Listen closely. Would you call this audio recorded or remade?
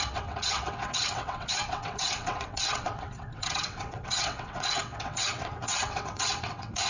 remade